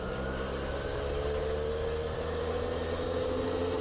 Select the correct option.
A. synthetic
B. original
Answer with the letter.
B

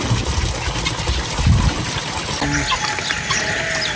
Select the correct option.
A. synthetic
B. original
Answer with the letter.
B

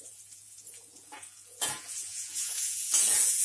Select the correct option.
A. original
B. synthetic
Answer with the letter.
B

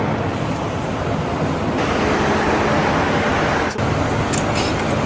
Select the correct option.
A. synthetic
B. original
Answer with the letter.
B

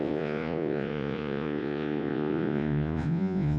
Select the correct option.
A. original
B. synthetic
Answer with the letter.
B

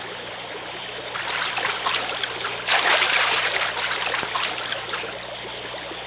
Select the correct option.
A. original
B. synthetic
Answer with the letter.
A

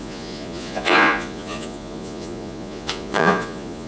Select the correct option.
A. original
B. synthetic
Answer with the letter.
B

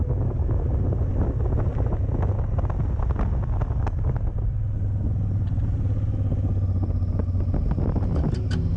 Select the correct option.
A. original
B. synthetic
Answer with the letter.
A